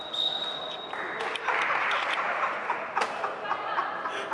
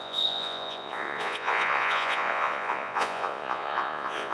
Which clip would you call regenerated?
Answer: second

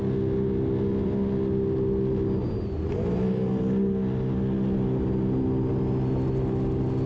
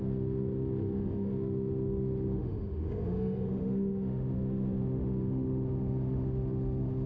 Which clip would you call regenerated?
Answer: second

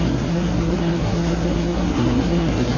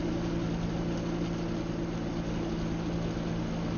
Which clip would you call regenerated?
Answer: first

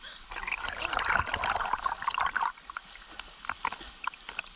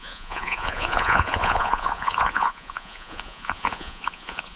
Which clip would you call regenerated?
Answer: second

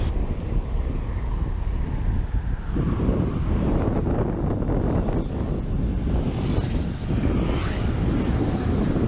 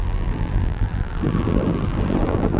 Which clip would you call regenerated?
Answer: second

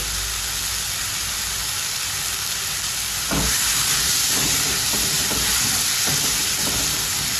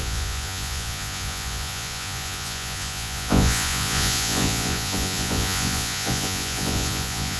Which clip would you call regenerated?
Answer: second